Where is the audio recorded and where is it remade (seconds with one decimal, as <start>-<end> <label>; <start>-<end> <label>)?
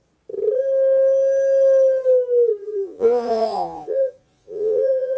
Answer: 0.0-2.6 recorded; 2.6-5.2 remade